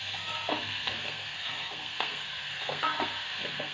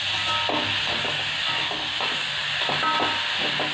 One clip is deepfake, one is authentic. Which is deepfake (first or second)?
first